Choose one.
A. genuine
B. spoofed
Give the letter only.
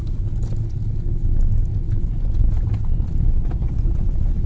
A